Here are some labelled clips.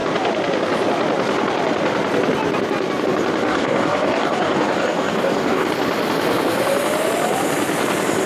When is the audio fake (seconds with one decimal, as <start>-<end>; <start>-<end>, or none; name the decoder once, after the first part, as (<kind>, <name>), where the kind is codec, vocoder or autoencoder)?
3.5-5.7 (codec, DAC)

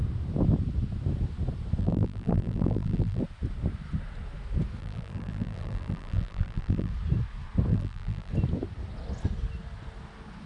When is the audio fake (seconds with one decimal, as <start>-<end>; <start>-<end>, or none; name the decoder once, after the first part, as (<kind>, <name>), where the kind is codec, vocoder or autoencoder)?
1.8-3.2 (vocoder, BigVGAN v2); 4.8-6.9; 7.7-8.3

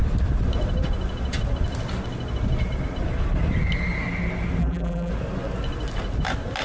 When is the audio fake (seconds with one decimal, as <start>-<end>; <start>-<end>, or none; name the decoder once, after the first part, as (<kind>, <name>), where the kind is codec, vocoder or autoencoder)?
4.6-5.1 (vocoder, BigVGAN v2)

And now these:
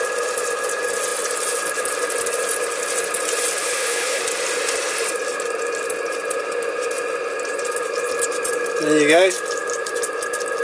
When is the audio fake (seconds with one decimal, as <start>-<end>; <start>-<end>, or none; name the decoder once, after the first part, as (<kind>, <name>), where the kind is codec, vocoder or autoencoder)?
3.6-4.2 (codec, HILCodec)